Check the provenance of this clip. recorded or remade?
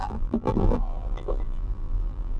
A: remade